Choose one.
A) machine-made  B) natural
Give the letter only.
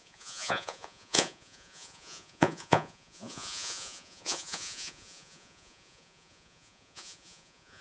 A